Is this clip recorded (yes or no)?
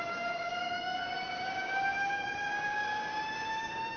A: no